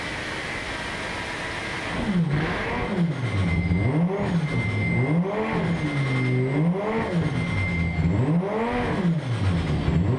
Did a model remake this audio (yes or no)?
no